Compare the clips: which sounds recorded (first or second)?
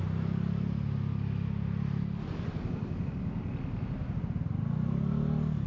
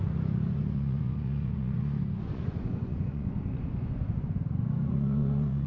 first